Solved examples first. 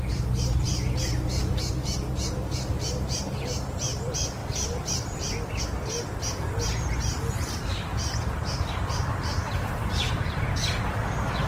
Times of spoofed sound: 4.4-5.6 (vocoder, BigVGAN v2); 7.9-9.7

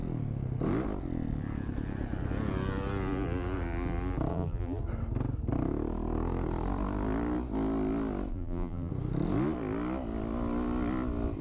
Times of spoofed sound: 4.3-4.8 (vocoder, BigVGAN v2); 8.3-8.9

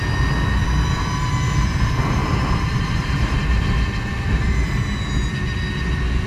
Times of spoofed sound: 2.2-3.4 (vocoder, BigVGAN v2)

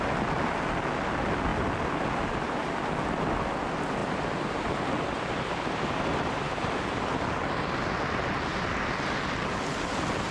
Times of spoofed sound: 4.0-6.8 (vocoder, BigVGAN v2)

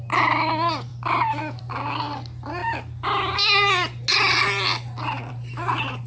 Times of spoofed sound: none

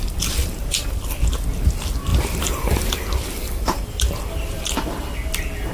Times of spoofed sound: 0.0-5.7 (vocoder, BigVGAN v2)